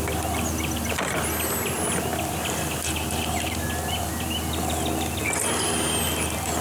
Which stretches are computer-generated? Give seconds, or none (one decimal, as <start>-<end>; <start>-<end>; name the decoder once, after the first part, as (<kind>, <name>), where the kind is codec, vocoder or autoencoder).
none